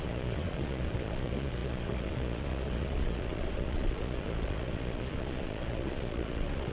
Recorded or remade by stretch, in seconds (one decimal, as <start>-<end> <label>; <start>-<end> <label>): 0.0-6.7 remade